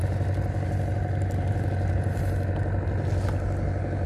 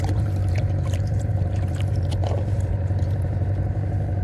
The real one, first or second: first